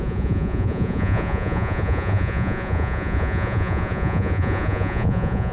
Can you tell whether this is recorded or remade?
remade